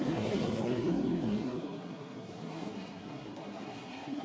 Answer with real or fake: fake